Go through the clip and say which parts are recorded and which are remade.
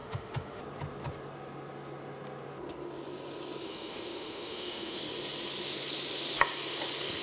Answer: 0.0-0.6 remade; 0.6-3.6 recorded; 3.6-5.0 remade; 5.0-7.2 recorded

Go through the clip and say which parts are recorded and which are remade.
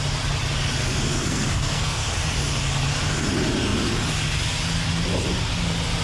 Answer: 0.0-1.1 recorded; 1.1-2.1 remade; 2.1-6.0 recorded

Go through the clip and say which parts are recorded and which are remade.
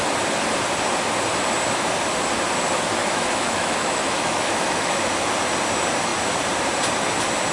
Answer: 0.0-3.0 recorded; 3.0-5.1 remade; 5.1-7.5 recorded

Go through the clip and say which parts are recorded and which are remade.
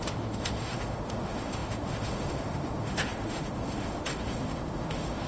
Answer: 0.0-5.3 remade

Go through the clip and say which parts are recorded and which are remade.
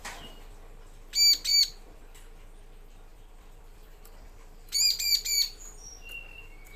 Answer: 0.0-1.5 recorded; 1.5-2.0 remade; 2.0-3.1 recorded; 3.1-6.8 remade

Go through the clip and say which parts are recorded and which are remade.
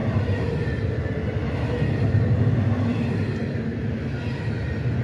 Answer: 0.0-5.0 recorded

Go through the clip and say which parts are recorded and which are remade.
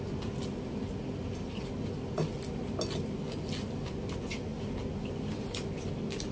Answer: 0.0-6.3 recorded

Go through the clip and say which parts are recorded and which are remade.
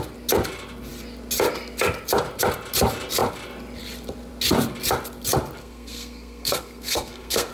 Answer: 0.0-5.6 recorded; 5.6-7.5 remade